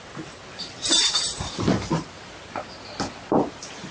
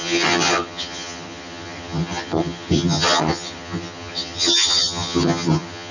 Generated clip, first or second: second